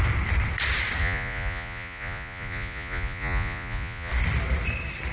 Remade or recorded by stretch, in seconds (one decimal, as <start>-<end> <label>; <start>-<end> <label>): 0.0-1.0 recorded; 1.0-4.1 remade; 4.1-5.1 recorded